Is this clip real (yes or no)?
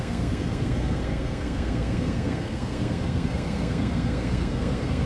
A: no